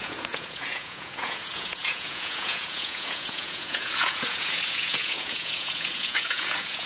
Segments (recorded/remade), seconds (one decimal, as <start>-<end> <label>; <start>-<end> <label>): 0.0-6.9 remade